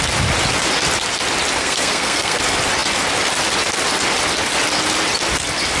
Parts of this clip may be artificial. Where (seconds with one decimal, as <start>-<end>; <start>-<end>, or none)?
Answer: 1.6-2.4